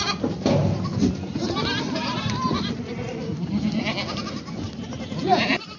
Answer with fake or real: real